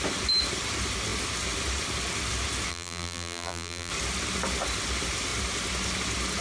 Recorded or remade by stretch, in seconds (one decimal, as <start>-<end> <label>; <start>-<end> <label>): 0.0-2.7 recorded; 2.7-3.9 remade; 3.9-6.4 recorded